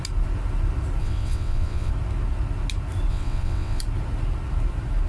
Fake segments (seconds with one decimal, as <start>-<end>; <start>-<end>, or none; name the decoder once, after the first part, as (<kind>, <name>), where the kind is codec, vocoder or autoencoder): 1.0-1.9 (vocoder, WaveNeXt); 3.1-3.8